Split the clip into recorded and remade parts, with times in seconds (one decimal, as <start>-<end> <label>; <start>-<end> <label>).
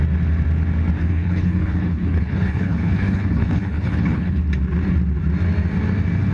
0.0-1.0 recorded; 1.0-4.4 remade; 4.4-6.3 recorded